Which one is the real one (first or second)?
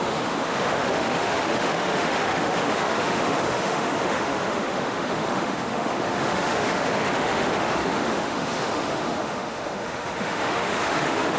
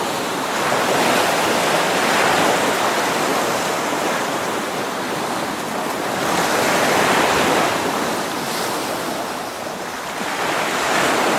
second